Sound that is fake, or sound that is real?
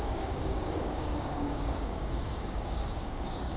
fake